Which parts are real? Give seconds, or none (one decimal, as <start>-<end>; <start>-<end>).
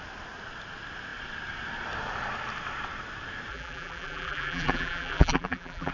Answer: 0.0-3.5